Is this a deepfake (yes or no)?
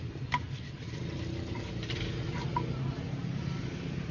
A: no